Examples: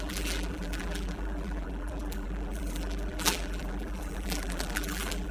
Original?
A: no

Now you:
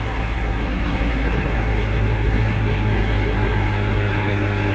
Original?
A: no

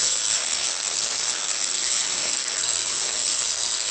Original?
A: no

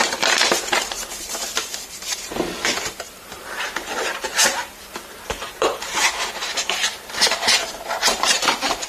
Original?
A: no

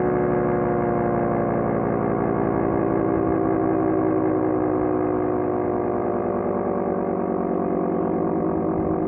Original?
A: yes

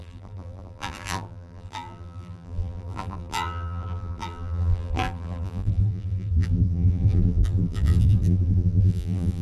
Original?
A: no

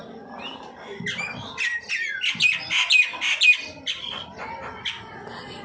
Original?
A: yes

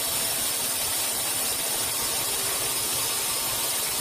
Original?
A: yes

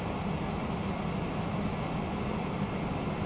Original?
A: yes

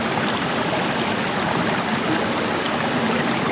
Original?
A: yes